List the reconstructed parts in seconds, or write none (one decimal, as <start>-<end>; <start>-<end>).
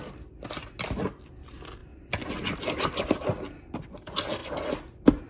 none